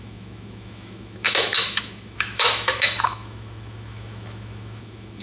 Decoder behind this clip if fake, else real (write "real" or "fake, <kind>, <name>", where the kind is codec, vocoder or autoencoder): fake, autoencoder, DAC-VAE